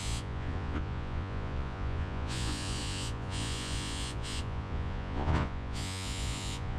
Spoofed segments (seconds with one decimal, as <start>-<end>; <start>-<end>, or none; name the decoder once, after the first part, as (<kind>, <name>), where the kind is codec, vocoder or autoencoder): 0.0-6.8 (vocoder, Vocos)